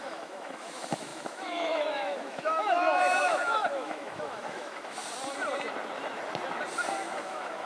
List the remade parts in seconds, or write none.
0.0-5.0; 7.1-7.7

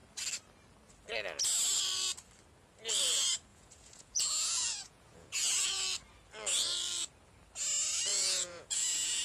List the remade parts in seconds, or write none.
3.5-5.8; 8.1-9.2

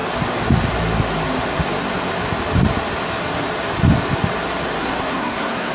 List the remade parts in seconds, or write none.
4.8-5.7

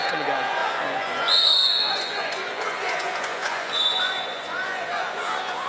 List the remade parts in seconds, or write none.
0.0-5.7

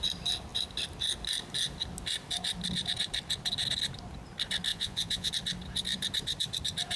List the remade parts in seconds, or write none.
4.7-5.3

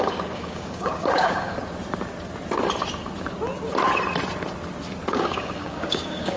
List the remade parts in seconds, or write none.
0.0-1.6; 5.1-6.4